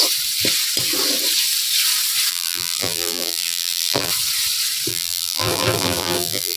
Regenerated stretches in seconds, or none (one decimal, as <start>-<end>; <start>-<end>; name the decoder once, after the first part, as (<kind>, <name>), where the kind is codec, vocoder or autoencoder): 2.3-4.1 (vocoder, BigVGAN v2); 4.9-6.6